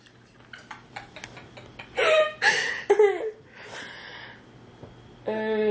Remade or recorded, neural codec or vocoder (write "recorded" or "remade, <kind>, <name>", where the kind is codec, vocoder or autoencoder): recorded